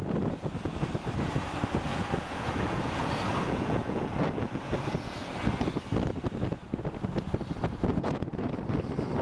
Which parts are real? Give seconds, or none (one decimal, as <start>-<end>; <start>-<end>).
0.0-1.9; 5.3-7.9; 8.5-9.2